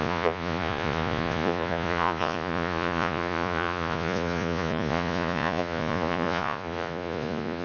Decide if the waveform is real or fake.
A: fake